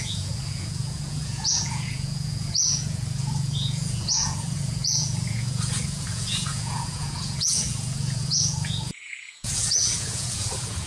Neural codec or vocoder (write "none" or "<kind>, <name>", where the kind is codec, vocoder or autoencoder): vocoder, Vocos